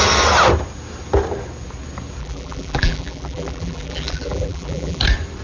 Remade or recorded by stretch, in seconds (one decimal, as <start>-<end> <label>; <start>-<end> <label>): 0.0-2.2 recorded; 2.2-5.0 remade; 5.0-5.4 recorded